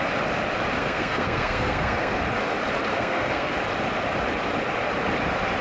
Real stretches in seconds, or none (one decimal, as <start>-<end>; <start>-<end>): 0.0-0.8; 2.2-2.9; 3.5-5.6